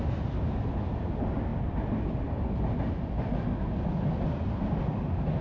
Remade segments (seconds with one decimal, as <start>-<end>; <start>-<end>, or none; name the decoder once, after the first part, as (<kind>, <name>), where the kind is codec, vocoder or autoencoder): none